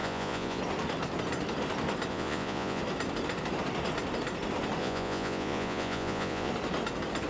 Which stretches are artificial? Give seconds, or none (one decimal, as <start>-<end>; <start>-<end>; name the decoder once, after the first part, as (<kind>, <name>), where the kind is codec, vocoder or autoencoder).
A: 0.0-0.6 (vocoder, Vocos); 2.1-2.8; 4.8-6.5